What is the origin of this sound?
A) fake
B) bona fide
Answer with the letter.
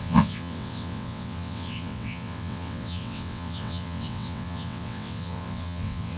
A